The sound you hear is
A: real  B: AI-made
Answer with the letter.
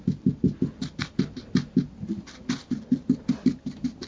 A